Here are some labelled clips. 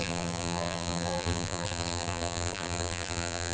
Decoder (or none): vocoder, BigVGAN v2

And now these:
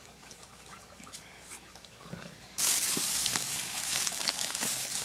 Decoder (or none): codec, DAC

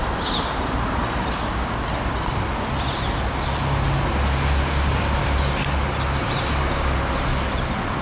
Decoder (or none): none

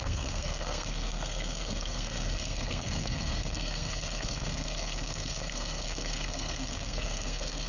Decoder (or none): codec, SNAC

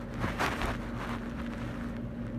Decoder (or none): none